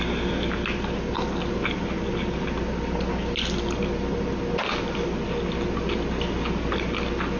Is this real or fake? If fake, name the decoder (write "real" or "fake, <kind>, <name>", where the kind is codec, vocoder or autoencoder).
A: real